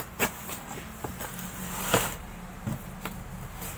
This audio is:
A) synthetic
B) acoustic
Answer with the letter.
B